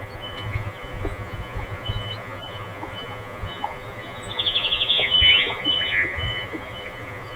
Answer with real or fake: fake